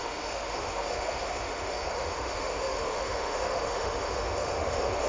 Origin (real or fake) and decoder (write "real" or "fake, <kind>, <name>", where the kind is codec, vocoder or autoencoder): fake, autoencoder, DAC-VAE